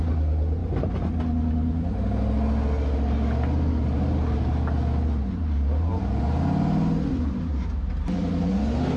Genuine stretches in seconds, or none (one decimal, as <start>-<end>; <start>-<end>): 0.0-9.0